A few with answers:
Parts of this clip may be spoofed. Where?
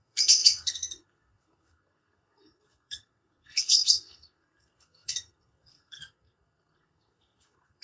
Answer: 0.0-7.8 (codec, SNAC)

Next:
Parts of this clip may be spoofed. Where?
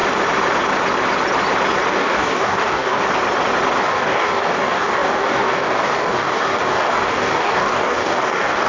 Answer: 1.9-3.0 (codec, DAC); 3.8-8.7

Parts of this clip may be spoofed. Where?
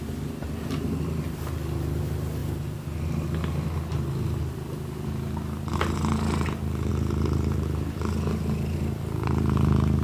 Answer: none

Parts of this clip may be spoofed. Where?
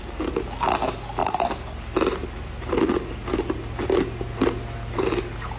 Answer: none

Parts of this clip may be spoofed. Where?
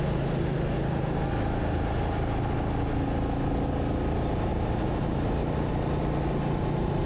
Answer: none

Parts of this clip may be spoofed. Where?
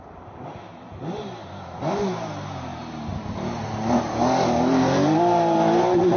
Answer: 0.0-6.2 (vocoder, BigVGAN v2)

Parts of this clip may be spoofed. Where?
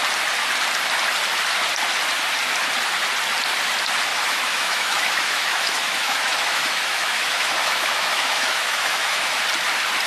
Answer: 4.1-9.4 (autoencoder, DAC-VAE)